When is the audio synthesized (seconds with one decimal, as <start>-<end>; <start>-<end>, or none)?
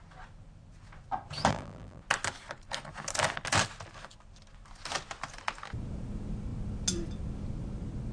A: 1.5-2.0